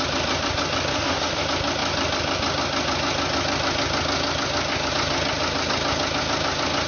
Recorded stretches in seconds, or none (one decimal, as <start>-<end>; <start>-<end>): 0.0-0.9; 1.4-6.9